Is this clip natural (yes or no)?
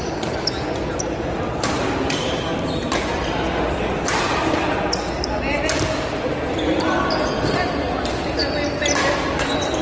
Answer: yes